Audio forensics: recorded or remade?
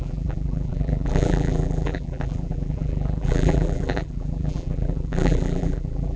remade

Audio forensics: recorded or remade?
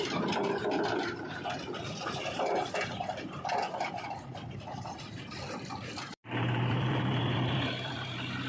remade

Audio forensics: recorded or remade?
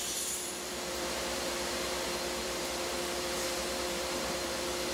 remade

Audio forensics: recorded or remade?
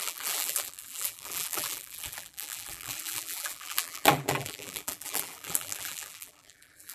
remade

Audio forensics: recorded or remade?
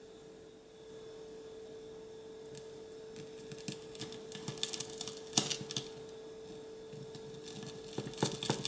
recorded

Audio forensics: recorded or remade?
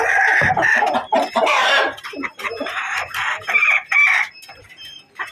remade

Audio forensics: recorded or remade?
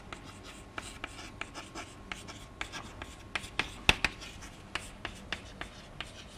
recorded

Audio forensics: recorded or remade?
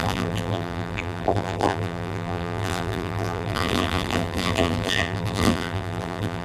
remade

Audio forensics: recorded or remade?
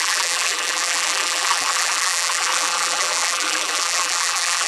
remade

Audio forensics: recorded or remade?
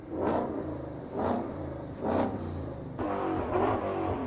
remade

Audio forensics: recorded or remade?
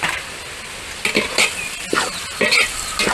recorded